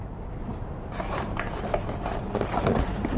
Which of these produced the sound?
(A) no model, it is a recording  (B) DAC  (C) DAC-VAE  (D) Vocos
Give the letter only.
A